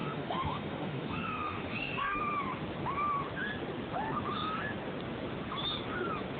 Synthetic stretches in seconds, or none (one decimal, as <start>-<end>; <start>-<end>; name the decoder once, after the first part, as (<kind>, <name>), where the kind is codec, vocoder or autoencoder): 0.0-2.2 (autoencoder, DAC-VAE)